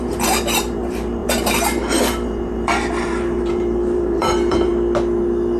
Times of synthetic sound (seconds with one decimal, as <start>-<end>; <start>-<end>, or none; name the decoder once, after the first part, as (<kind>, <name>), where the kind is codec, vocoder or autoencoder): 0.0-4.7 (vocoder, BigVGAN v2)